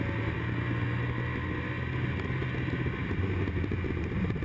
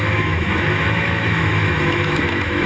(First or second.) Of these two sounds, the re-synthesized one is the second